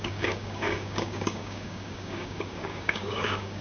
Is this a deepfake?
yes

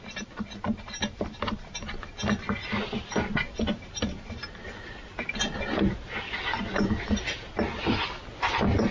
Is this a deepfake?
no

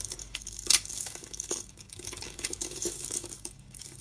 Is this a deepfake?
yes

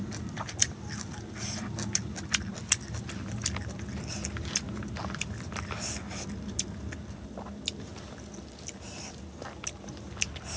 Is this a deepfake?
no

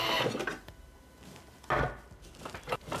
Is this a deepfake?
no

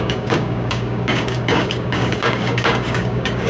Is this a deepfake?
yes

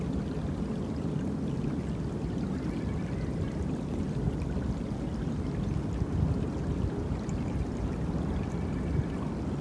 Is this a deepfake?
no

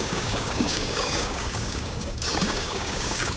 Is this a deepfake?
yes